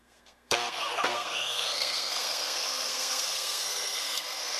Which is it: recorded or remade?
remade